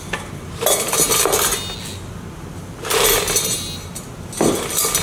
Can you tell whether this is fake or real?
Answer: real